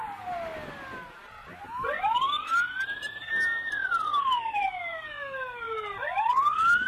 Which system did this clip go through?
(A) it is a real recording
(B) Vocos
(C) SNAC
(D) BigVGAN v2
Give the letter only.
A